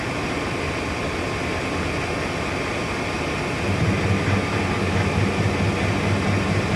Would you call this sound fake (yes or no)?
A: no